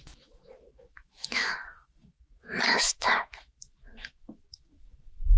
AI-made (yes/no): yes